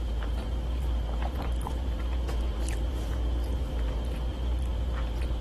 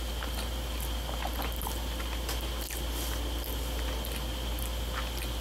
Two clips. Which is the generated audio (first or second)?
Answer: first